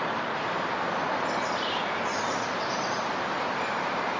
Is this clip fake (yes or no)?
no